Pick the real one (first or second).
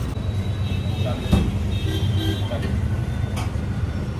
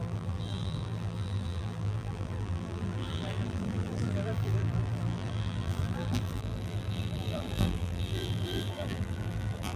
first